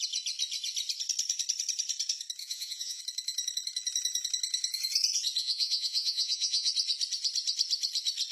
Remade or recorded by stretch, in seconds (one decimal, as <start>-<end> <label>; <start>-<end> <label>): 0.0-2.4 recorded; 2.4-3.0 remade; 3.0-5.4 recorded; 5.4-6.7 remade; 6.7-8.3 recorded